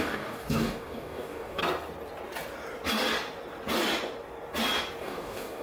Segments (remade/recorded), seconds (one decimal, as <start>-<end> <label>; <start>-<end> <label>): 0.0-1.6 remade; 1.6-5.0 recorded; 5.0-5.6 remade